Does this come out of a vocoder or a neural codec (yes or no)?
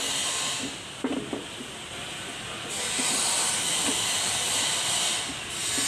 yes